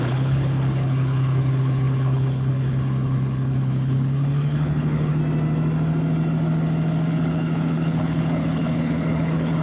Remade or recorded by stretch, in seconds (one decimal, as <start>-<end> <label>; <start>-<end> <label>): 0.0-5.2 remade; 5.2-7.1 recorded; 7.1-9.6 remade